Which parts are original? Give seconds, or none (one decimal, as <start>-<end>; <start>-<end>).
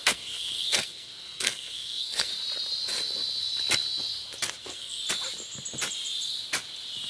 2.3-4.6; 5.0-7.1